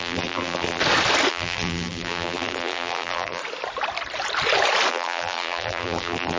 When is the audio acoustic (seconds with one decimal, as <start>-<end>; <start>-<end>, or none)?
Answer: 0.8-1.3; 3.4-4.9